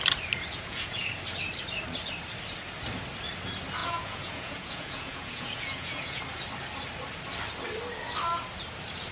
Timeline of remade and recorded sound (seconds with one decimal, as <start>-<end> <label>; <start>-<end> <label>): 0.0-0.5 recorded; 0.5-1.1 remade; 1.1-3.8 recorded; 3.8-6.2 remade; 6.2-9.1 recorded